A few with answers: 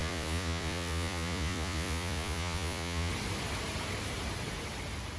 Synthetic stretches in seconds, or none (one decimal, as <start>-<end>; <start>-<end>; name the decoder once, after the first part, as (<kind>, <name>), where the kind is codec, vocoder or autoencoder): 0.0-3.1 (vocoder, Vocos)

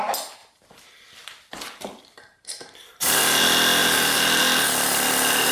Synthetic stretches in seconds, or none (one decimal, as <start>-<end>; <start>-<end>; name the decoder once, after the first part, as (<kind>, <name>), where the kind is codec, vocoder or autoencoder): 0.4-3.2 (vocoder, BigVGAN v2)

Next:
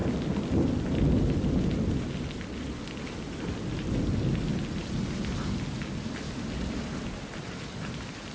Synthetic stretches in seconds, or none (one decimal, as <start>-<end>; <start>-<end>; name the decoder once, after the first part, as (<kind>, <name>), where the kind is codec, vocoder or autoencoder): none

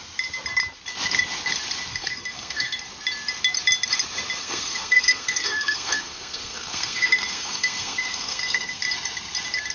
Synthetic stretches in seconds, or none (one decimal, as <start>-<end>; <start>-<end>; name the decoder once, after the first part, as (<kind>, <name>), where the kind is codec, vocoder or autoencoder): 1.9-2.8 (codec, SNAC); 4.4-8.8

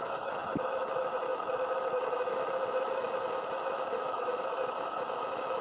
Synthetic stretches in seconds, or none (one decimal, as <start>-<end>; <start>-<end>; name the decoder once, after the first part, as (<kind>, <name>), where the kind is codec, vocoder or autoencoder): 0.0-5.6 (autoencoder, DAC-VAE)

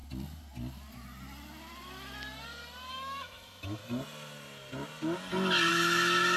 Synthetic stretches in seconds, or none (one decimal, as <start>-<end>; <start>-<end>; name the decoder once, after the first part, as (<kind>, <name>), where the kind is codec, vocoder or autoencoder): 2.9-3.8 (autoencoder, DAC-VAE); 5.7-6.4

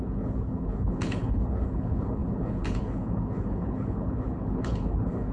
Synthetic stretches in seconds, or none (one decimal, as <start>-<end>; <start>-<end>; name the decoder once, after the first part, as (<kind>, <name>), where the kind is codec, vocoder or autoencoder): 0.0-5.3 (codec, HILCodec)